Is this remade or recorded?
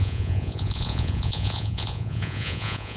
remade